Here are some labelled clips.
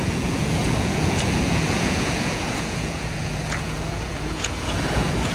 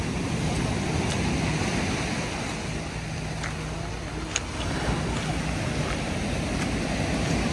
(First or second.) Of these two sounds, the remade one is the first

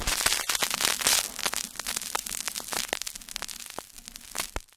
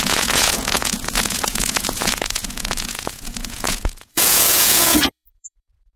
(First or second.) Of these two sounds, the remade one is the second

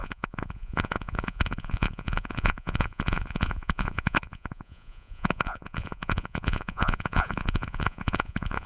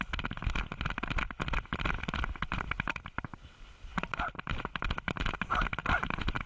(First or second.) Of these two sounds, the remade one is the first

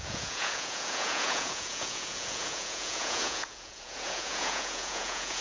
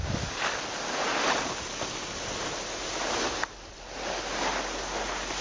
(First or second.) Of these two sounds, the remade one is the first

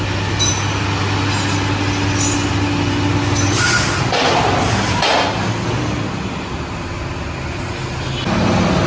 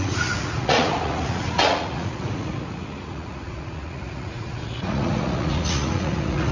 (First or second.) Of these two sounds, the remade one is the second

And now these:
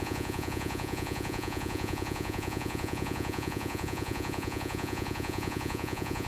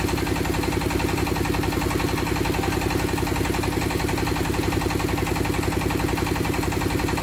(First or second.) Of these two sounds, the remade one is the first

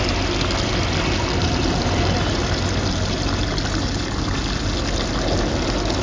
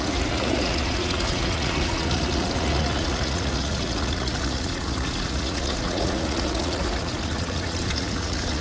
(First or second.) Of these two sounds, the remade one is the second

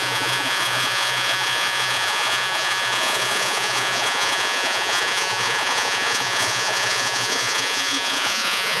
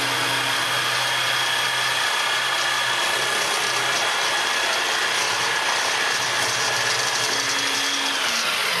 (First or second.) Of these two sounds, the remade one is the first